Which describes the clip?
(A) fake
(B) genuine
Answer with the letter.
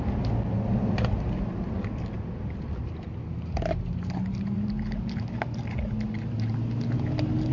B